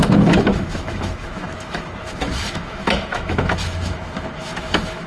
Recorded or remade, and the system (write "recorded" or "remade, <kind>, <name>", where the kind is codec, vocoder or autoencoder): remade, autoencoder, DAC-VAE